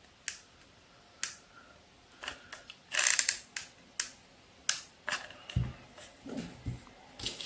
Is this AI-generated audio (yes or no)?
no